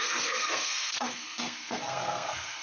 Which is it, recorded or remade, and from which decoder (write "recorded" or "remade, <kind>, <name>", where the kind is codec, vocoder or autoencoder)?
remade, codec, SNAC